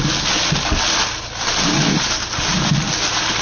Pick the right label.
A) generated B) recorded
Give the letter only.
B